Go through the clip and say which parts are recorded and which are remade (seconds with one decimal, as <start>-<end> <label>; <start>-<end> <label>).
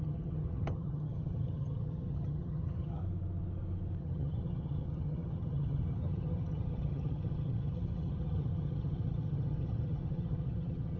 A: 0.0-3.0 remade; 3.0-4.0 recorded; 4.0-11.0 remade